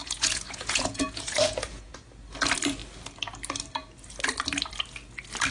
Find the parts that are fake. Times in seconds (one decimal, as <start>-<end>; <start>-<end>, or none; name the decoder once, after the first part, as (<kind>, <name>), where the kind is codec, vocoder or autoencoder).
0.0-1.9 (vocoder, Vocos)